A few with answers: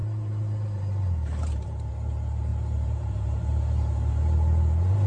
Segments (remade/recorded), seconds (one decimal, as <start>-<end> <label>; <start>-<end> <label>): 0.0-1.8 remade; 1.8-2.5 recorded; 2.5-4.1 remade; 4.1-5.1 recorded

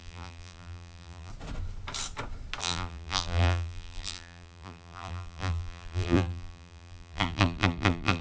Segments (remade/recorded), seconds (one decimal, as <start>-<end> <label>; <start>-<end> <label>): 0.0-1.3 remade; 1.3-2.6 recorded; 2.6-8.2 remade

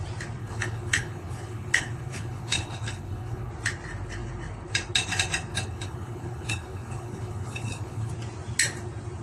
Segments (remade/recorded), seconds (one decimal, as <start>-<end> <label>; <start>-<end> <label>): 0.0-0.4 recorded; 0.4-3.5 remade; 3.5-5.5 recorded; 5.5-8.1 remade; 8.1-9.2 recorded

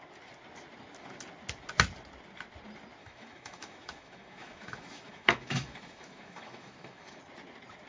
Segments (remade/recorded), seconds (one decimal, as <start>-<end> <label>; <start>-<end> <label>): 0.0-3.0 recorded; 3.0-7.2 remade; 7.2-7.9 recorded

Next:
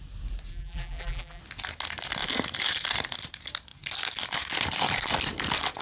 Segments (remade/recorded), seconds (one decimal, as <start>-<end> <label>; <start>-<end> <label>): 0.0-0.5 recorded; 0.5-1.4 remade; 1.4-5.8 recorded

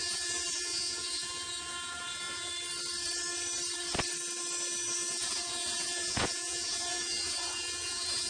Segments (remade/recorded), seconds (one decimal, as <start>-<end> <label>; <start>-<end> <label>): 0.0-2.5 remade; 2.5-5.1 recorded; 5.1-8.3 remade